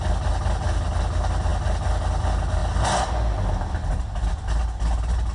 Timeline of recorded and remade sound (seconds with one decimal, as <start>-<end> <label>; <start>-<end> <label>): 0.0-5.3 recorded